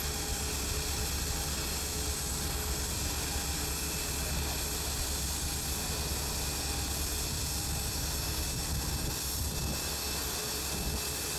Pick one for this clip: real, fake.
real